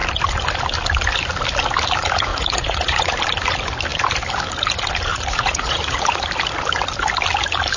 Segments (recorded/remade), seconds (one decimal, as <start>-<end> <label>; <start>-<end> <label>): 0.0-2.3 recorded; 2.3-3.1 remade; 3.1-5.1 recorded; 5.1-6.3 remade; 6.3-7.8 recorded